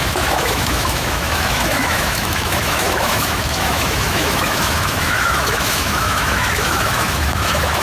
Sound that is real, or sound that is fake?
fake